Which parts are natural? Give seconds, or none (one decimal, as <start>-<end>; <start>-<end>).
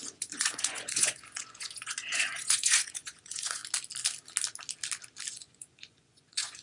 3.6-5.3